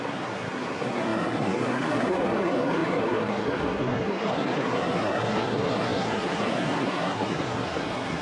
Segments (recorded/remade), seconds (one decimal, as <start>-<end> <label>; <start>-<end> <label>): 0.0-8.2 remade